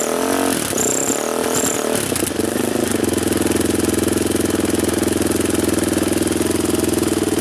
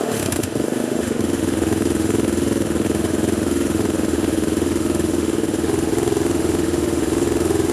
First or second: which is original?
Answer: first